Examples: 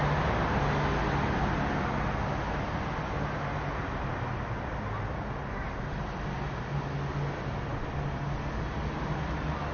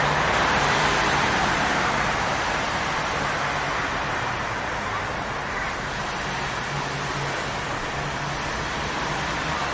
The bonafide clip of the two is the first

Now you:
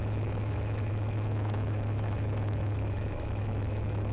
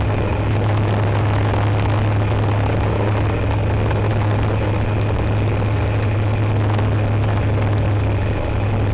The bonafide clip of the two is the second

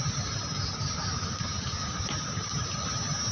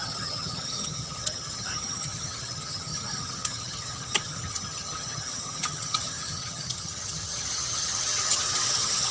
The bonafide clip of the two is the first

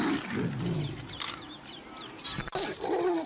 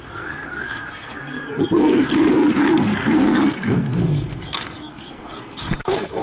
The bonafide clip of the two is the first